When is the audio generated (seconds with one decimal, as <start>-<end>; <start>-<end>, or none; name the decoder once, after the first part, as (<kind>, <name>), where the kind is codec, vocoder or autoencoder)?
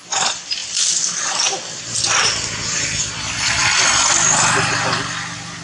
none